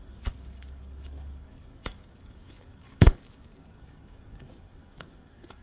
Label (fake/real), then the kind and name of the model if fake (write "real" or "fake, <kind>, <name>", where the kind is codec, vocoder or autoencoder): fake, codec, DAC